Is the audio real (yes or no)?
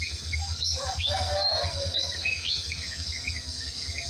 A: no